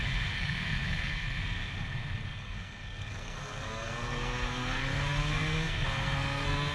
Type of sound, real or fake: fake